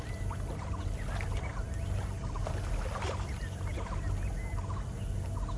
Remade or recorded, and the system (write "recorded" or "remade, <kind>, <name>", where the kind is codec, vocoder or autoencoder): recorded